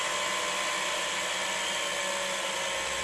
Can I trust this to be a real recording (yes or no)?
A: yes